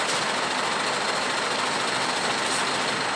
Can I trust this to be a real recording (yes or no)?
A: yes